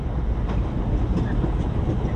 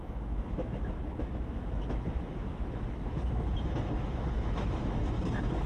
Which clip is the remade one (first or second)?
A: second